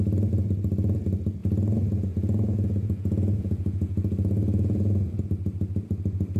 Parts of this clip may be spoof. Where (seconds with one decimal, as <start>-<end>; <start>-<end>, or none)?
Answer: 1.4-5.2